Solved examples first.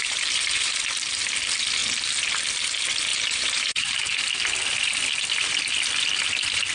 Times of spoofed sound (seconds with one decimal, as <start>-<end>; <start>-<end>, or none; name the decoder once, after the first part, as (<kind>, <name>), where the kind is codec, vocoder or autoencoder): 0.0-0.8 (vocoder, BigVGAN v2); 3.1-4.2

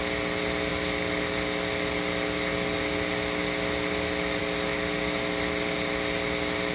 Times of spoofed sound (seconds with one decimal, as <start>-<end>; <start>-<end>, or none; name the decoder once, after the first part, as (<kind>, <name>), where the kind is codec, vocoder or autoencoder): none

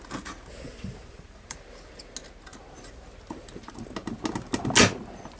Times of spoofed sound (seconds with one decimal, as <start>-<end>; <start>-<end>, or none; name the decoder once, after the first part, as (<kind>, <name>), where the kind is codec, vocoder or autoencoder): 0.7-1.6 (vocoder, BigVGAN v2)

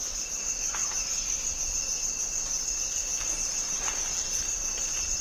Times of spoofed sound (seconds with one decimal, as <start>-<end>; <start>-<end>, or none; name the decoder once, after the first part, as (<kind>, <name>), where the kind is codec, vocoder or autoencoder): 0.0-0.8 (vocoder, BigVGAN v2); 2.7-5.2

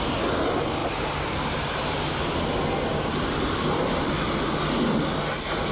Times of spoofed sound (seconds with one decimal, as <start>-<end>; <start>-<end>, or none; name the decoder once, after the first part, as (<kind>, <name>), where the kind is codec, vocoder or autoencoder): none

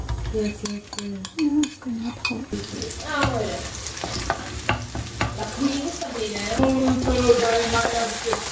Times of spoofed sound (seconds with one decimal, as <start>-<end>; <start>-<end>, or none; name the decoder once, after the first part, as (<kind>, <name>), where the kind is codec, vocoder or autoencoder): 1.5-4.2 (vocoder, BigVGAN v2); 6.8-7.4